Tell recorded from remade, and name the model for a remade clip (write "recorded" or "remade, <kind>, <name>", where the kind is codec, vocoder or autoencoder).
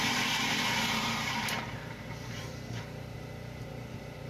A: remade, vocoder, BigVGAN v2